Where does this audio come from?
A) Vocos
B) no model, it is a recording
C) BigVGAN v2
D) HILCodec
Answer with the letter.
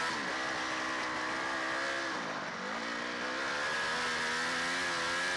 B